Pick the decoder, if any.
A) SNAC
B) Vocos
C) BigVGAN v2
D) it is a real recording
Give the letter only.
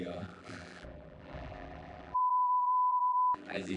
C